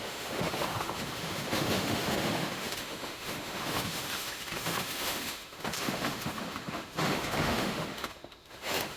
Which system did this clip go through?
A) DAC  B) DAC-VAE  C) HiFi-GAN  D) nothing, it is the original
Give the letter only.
B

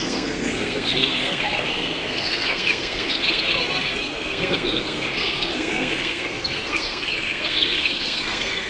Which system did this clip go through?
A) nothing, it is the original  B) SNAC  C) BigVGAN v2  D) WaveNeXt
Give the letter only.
B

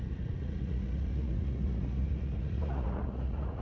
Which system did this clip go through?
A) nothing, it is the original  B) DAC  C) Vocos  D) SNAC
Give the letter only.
C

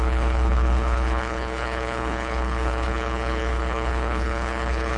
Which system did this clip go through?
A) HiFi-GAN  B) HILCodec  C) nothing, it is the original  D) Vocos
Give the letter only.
B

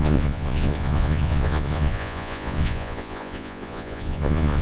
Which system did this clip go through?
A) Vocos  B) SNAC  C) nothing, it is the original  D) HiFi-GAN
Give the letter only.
A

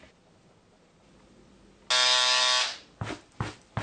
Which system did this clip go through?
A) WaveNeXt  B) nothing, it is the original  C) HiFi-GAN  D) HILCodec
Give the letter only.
B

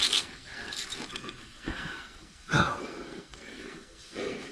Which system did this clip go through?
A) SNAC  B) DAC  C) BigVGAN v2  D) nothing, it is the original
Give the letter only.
A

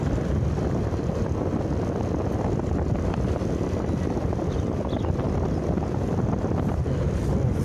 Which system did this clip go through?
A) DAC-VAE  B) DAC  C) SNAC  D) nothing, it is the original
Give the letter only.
D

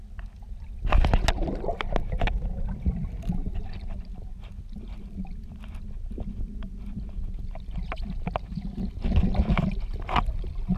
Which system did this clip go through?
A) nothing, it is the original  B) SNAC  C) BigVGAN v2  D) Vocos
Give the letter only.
A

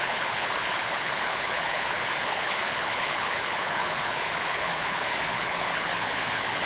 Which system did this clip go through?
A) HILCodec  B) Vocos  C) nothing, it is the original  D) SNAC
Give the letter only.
A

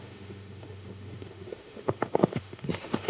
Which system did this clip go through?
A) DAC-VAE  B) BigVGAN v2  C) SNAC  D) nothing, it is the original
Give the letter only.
A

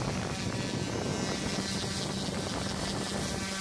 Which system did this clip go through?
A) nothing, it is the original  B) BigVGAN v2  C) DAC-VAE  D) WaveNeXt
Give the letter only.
A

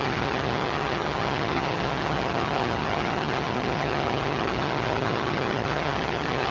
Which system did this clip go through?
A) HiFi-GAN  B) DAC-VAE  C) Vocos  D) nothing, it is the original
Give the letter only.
A